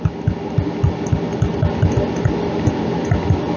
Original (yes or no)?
yes